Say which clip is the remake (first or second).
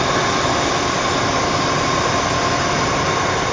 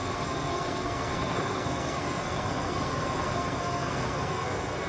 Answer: second